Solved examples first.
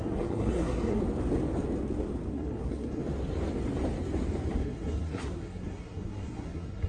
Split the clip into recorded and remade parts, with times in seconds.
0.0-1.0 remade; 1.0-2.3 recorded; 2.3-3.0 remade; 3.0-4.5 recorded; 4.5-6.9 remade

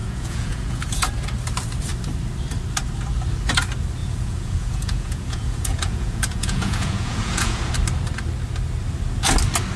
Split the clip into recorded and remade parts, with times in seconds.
0.0-1.1 remade; 1.1-4.0 recorded; 4.0-7.7 remade; 7.7-9.8 recorded

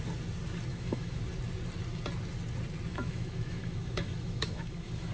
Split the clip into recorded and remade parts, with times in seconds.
0.0-0.7 recorded; 0.7-1.2 remade; 1.2-2.9 recorded; 2.9-5.1 remade

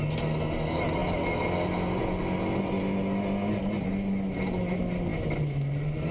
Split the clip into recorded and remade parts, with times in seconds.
0.0-6.1 recorded